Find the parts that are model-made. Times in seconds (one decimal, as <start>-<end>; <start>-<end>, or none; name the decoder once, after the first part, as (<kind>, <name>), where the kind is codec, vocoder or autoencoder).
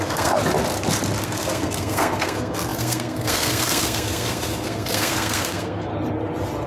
0.0-0.4 (codec, SNAC); 1.2-5.9